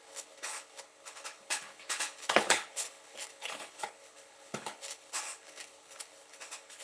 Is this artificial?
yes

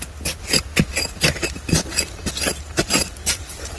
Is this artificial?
no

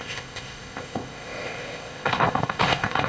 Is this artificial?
yes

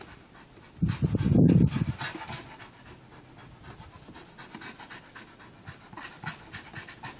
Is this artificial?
no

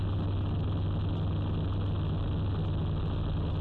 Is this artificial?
no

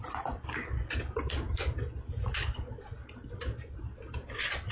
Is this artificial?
yes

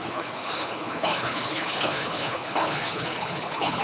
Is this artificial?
yes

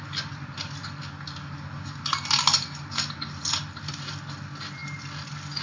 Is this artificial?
no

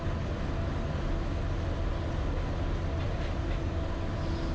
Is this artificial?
no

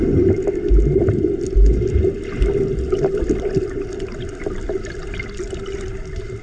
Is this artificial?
no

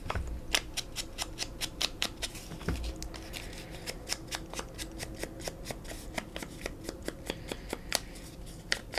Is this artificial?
no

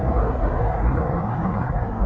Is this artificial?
yes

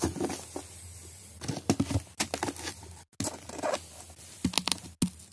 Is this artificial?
no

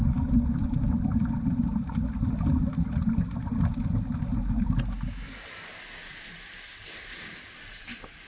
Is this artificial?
no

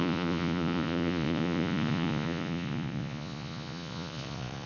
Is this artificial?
yes